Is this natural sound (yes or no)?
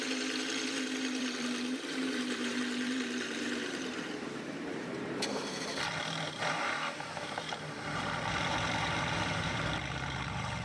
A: no